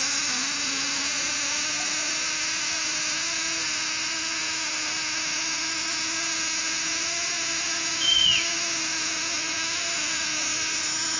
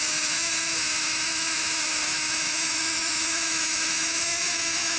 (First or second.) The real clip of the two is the first